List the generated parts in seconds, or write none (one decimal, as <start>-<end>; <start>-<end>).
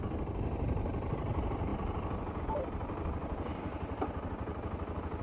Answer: none